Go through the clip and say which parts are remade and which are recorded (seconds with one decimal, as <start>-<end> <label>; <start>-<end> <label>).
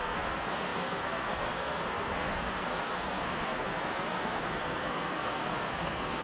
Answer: 0.0-6.2 remade